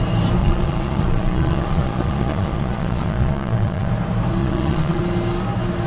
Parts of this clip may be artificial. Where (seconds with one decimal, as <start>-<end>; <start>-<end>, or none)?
0.4-3.9; 4.4-5.0